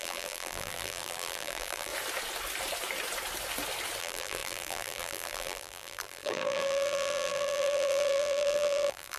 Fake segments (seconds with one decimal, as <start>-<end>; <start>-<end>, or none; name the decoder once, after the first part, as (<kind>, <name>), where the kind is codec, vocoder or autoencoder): 0.0-1.9 (vocoder, BigVGAN v2); 4.0-9.2